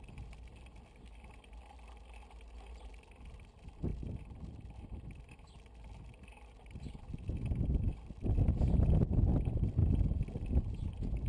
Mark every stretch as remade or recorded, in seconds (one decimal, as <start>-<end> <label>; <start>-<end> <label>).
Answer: 0.0-3.9 recorded; 3.9-5.6 remade; 5.6-11.3 recorded